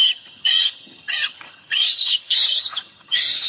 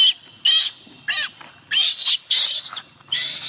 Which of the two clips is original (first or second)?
second